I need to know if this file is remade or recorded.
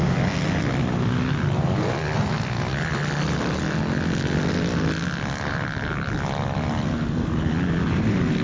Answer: recorded